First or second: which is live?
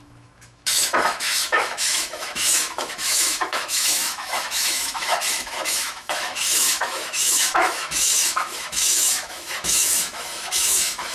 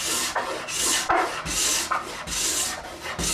second